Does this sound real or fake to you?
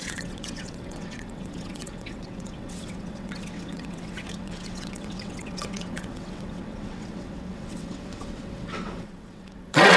fake